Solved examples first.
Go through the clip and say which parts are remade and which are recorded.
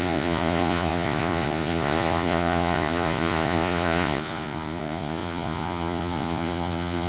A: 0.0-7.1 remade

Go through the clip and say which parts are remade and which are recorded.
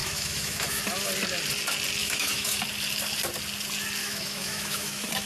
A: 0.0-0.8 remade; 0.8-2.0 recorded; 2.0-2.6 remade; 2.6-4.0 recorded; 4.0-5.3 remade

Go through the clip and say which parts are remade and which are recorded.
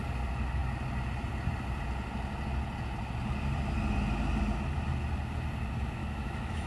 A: 0.0-6.0 recorded; 6.0-6.7 remade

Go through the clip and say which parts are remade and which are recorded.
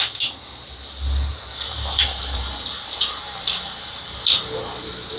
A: 0.0-1.3 recorded; 1.3-4.3 remade; 4.3-5.2 recorded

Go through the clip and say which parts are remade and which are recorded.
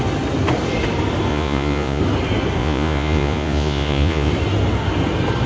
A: 0.0-1.3 recorded; 1.3-2.0 remade; 2.0-2.6 recorded; 2.6-4.3 remade; 4.3-5.5 recorded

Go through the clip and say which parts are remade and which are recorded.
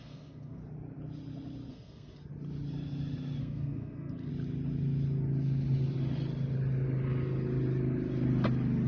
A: 0.0-0.6 remade; 0.6-1.7 recorded; 1.7-2.2 remade; 2.2-3.4 recorded; 3.4-4.3 remade; 4.3-8.9 recorded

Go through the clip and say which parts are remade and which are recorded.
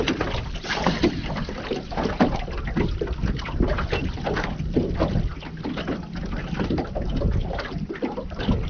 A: 0.0-8.7 recorded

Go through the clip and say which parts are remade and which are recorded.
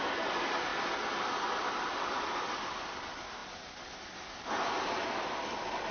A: 0.0-5.9 recorded